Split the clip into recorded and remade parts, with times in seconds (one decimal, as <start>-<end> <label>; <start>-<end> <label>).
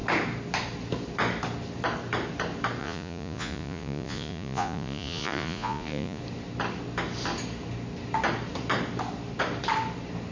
0.0-2.8 recorded; 2.8-6.2 remade; 6.2-10.3 recorded